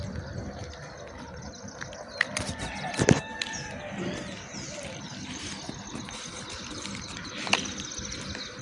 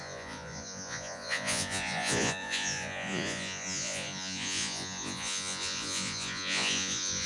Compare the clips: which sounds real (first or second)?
first